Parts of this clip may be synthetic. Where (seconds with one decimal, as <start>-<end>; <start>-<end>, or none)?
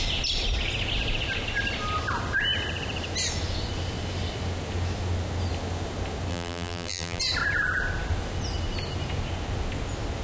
6.3-7.2